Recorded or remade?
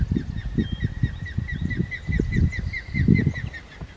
recorded